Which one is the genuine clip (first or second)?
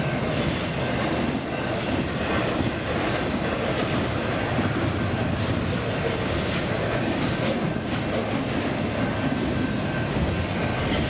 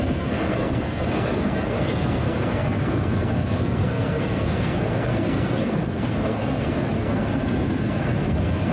first